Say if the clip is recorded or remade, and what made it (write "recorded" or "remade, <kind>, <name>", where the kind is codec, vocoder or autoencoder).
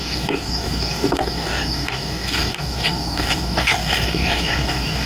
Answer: remade, codec, DAC